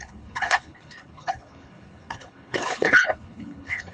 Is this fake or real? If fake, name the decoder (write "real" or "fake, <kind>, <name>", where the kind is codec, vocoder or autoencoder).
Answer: fake, codec, HILCodec